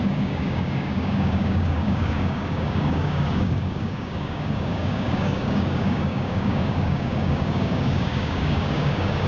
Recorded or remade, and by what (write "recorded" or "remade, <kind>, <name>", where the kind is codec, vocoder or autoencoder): remade, codec, DAC